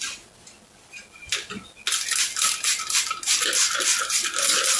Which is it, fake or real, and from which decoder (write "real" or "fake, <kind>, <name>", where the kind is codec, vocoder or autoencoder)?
real